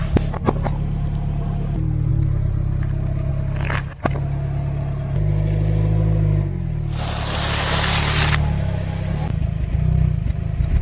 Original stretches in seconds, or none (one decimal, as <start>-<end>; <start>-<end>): 0.0-10.8